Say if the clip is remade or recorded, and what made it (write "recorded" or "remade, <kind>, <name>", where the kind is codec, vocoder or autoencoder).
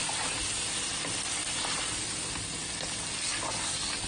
recorded